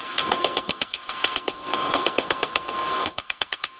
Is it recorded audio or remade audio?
remade